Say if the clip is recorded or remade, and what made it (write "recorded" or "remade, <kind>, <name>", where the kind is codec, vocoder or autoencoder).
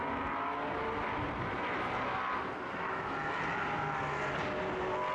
recorded